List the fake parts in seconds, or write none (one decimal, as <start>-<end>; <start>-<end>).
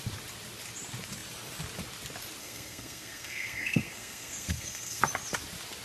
2.4-5.0